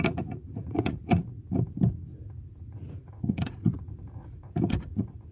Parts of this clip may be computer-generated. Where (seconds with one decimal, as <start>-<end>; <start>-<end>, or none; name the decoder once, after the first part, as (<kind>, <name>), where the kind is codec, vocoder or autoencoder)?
0.0-1.2 (vocoder, Vocos); 2.6-5.3